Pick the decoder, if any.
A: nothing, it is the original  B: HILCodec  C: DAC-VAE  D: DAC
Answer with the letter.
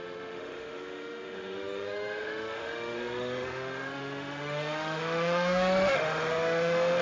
C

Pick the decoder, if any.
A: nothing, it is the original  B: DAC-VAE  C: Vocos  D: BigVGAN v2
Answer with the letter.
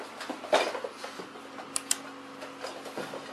A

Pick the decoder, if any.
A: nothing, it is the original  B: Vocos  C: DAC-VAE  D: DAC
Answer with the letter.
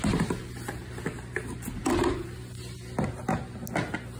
A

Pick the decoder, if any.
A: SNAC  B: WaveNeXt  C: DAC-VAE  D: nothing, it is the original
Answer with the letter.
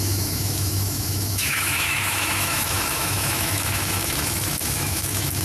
C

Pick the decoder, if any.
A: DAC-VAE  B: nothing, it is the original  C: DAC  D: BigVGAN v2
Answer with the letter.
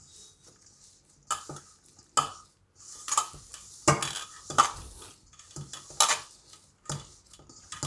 B